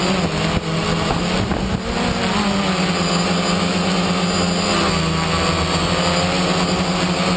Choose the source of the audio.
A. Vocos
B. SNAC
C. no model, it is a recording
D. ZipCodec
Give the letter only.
C